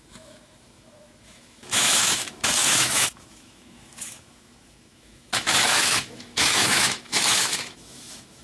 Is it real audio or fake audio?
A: fake